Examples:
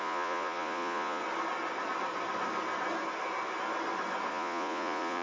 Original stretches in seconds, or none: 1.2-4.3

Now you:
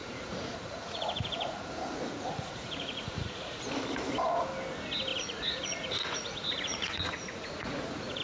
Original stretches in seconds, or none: 3.6-5.1

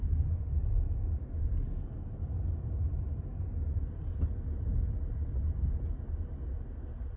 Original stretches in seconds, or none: 0.0-7.2

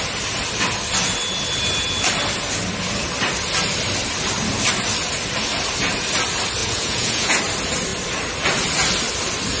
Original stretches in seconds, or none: 0.0-6.6; 7.4-9.6

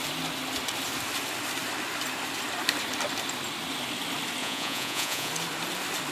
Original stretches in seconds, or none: 0.0-4.4; 5.3-6.1

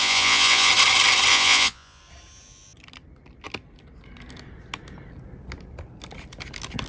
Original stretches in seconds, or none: 0.7-1.3; 2.0-6.9

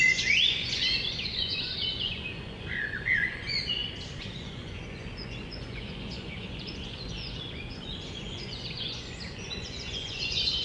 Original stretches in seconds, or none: none